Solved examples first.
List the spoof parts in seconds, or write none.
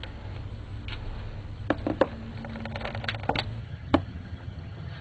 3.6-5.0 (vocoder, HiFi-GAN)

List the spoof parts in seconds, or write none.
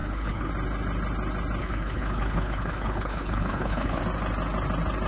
0.0-0.5 (codec, HILCodec); 1.6-4.0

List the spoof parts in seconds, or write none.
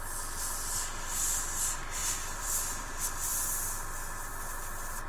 2.0-2.9 (vocoder, BigVGAN v2)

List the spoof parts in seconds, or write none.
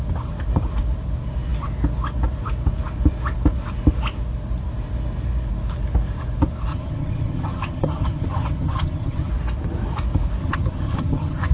6.7-9.3 (vocoder, HiFi-GAN); 10.4-11.5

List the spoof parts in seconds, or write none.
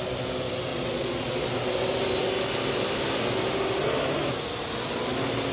0.7-1.3 (vocoder, Vocos)